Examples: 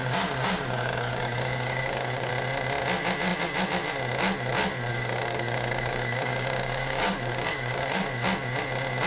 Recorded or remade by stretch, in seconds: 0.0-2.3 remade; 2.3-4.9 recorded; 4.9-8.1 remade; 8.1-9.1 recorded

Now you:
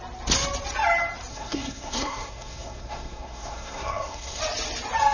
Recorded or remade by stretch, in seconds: 0.0-1.3 recorded; 1.3-4.4 remade; 4.4-5.1 recorded